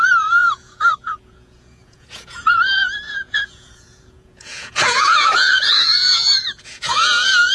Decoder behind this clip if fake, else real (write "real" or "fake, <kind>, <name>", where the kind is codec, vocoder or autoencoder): fake, vocoder, Vocos